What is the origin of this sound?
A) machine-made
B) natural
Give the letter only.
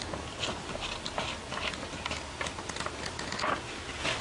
B